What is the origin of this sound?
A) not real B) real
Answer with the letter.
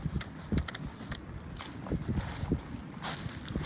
B